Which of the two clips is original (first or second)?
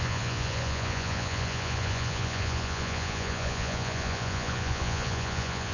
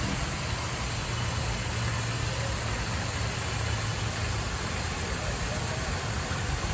second